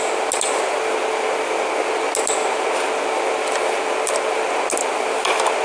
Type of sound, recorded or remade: recorded